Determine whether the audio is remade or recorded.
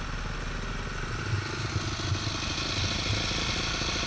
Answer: recorded